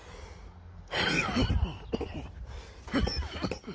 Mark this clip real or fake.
real